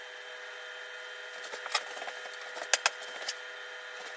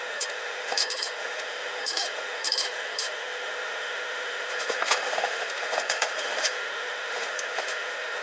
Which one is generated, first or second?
second